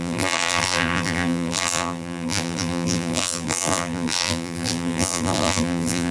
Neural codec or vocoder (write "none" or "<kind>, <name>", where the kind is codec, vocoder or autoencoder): vocoder, BigVGAN v2